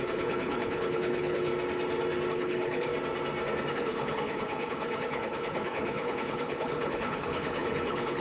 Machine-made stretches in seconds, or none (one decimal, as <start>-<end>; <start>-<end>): 0.0-1.5; 2.3-2.9; 3.7-8.2